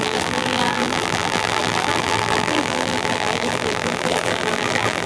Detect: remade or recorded remade